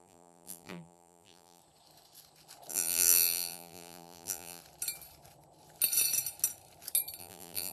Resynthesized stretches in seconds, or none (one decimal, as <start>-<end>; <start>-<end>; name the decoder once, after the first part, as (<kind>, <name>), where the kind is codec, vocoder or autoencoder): 0.0-1.6 (vocoder, BigVGAN v2); 2.7-4.6; 7.2-7.7